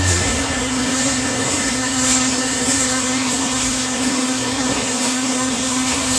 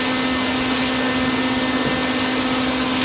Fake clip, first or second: first